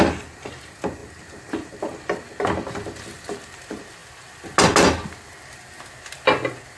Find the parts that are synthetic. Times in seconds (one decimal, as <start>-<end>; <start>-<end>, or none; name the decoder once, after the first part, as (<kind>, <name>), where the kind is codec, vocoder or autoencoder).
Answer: none